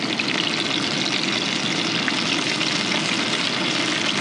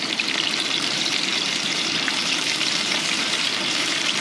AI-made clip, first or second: second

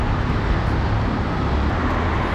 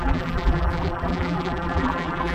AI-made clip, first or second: second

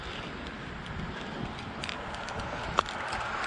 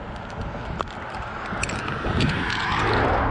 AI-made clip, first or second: first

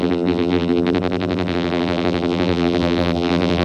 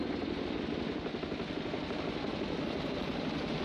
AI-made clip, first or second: first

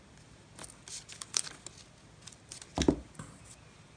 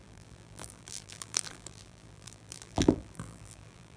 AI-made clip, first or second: second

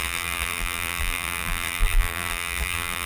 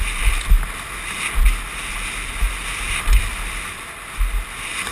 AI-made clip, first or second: first